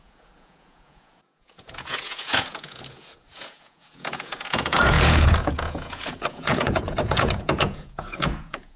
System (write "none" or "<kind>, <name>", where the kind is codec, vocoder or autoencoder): vocoder, Vocos